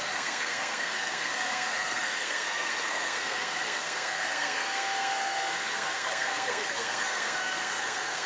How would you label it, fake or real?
fake